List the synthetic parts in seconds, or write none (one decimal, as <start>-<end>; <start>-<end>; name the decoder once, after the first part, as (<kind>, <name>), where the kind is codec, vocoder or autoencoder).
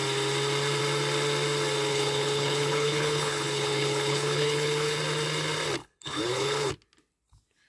1.9-5.0 (codec, HILCodec); 5.8-6.7